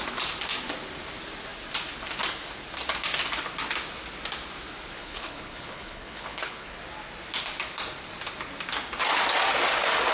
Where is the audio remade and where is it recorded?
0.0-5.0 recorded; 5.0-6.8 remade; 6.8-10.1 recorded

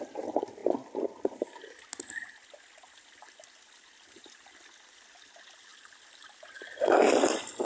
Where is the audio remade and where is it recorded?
0.0-7.6 recorded

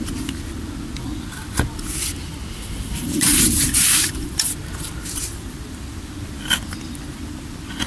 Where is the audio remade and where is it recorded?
0.0-3.3 recorded; 3.3-4.5 remade; 4.5-7.9 recorded

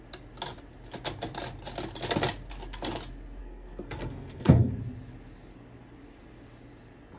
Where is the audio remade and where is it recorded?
0.0-3.4 recorded; 3.4-4.7 remade; 4.7-7.2 recorded

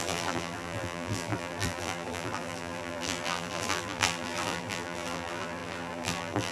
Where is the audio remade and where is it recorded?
0.0-6.5 remade